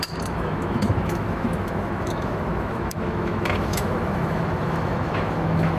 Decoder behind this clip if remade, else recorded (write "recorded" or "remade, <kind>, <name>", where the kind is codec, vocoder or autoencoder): remade, autoencoder, DAC-VAE